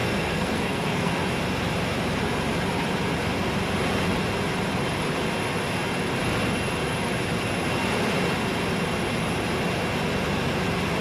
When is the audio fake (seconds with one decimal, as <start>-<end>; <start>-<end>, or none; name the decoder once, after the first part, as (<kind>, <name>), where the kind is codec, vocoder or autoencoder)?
0.0-1.1 (codec, SNAC)